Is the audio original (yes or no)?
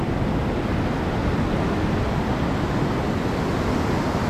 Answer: yes